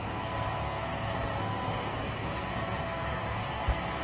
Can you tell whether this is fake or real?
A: fake